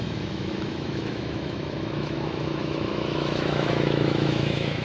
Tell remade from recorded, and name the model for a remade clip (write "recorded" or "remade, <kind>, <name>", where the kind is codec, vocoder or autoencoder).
remade, autoencoder, DAC-VAE